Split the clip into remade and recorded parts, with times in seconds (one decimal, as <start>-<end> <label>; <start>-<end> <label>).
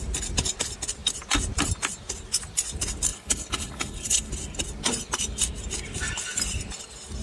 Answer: 0.0-3.1 recorded; 3.1-4.3 remade; 4.3-7.2 recorded